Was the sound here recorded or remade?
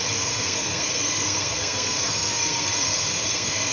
remade